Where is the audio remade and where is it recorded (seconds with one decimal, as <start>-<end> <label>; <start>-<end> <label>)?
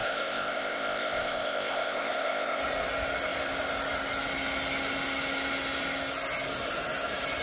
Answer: 0.0-2.6 remade; 2.6-7.4 recorded